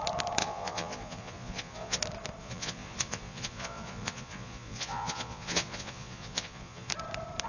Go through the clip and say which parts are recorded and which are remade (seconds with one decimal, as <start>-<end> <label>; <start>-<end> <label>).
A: 0.0-0.4 recorded; 0.4-2.0 remade; 2.0-2.4 recorded; 2.4-6.9 remade; 6.9-7.5 recorded